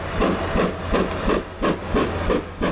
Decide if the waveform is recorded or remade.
recorded